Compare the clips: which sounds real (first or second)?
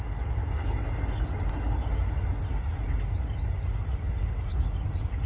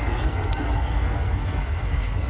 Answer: first